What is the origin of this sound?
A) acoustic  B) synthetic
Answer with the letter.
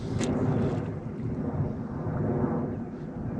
A